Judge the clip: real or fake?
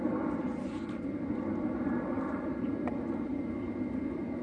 real